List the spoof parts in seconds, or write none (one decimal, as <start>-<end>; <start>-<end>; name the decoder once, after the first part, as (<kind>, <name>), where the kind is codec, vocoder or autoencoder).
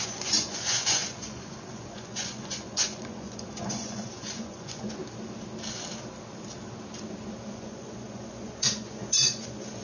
0.0-5.0 (vocoder, Vocos); 7.5-9.8